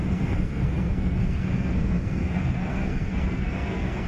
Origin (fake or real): fake